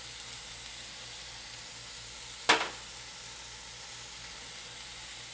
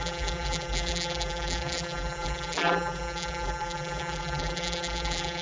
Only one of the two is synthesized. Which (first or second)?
second